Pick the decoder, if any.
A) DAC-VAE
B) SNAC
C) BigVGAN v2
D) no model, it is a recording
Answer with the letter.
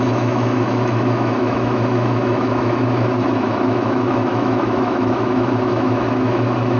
A